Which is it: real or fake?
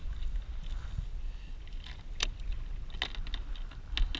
real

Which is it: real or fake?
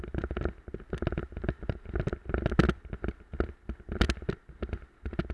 real